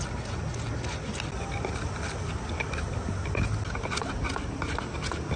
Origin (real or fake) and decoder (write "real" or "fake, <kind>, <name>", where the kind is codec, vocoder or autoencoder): real